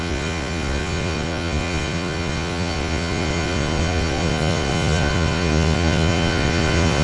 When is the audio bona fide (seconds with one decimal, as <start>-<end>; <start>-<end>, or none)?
none